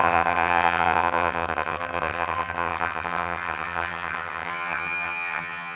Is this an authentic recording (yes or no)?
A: no